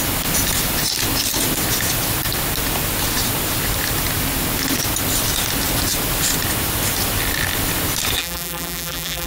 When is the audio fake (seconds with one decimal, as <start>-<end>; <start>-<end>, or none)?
8.2-9.3